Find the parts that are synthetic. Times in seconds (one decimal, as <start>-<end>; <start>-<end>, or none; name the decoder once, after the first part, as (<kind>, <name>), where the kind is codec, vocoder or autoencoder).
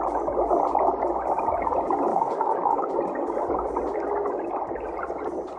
2.1-2.9 (codec, DAC)